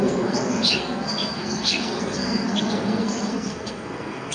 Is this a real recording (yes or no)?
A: no